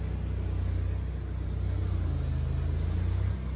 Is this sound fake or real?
real